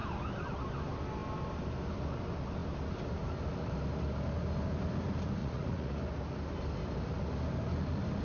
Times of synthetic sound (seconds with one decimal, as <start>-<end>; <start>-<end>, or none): 5.4-6.0